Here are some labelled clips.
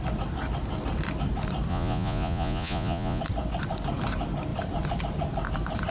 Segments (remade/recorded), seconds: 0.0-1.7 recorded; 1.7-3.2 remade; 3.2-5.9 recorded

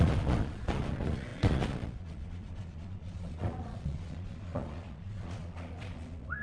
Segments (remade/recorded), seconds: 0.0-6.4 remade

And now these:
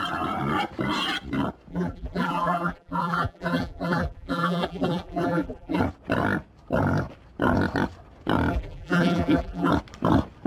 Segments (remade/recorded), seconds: 0.0-1.7 recorded; 1.7-5.8 remade; 5.8-8.5 recorded; 8.5-9.7 remade; 9.7-10.5 recorded